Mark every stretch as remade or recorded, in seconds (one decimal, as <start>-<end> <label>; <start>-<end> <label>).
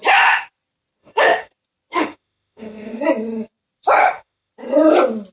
0.0-1.0 recorded; 1.0-1.5 remade; 1.5-1.9 recorded; 1.9-3.0 remade; 3.0-4.0 recorded; 4.0-4.5 remade; 4.5-5.3 recorded